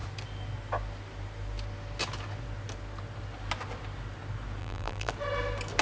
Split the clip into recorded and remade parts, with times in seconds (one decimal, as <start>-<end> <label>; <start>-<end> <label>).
0.0-4.6 recorded; 4.6-5.1 remade; 5.1-5.8 recorded